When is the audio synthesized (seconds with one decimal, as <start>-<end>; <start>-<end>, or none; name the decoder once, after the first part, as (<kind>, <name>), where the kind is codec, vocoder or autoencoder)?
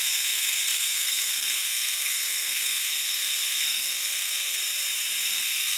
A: 0.0-4.6 (codec, SNAC); 5.2-5.8